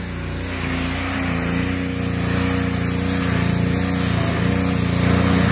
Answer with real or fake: real